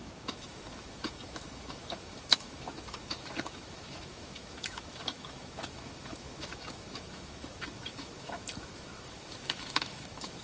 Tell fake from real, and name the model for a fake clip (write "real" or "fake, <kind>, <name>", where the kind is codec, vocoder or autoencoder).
fake, autoencoder, DAC-VAE